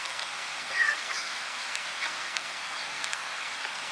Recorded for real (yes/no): no